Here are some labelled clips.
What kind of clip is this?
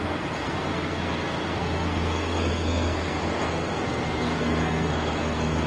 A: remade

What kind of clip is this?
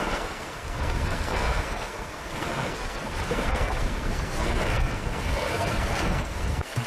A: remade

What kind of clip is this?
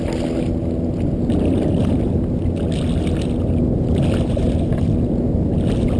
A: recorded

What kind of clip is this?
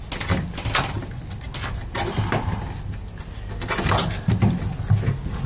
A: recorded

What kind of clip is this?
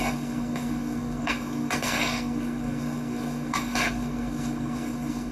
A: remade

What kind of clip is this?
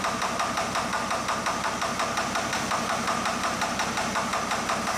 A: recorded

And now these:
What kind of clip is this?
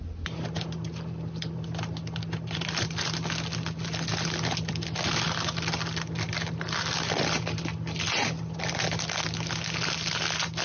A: recorded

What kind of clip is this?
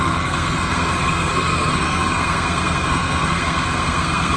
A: remade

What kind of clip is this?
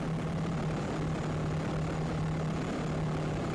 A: recorded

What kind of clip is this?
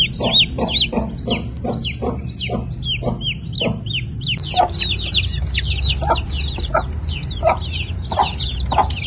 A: recorded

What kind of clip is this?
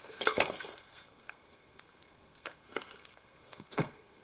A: remade